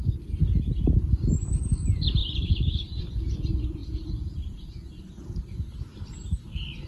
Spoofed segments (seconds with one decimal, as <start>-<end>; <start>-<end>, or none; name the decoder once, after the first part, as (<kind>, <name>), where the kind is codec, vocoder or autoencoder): 2.2-3.0 (vocoder, BigVGAN v2); 3.8-6.4